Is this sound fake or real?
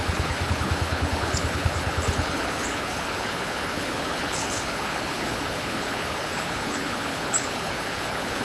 fake